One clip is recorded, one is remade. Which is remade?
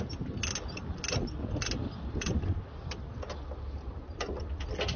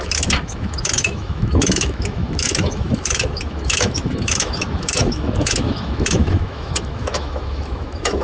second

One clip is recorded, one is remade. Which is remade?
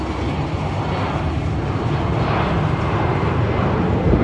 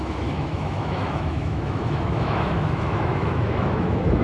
second